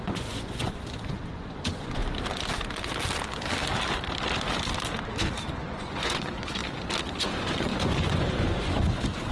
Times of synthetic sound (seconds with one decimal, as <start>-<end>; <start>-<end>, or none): 0.0-2.0; 5.6-6.6; 7.2-9.3